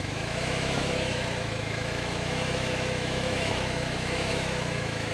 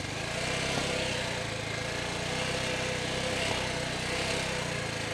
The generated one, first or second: first